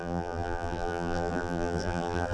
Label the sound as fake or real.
fake